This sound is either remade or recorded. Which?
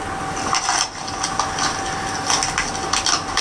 recorded